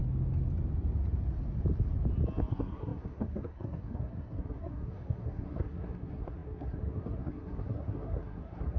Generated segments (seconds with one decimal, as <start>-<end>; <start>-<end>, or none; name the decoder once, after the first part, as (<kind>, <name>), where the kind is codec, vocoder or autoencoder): 2.5-8.8 (codec, SNAC)